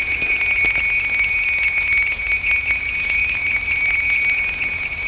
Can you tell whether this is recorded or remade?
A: recorded